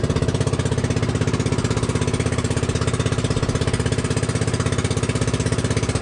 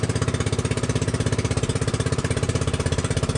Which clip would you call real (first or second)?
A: first